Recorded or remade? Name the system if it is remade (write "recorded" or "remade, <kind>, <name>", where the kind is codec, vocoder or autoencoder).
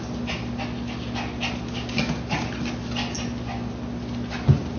recorded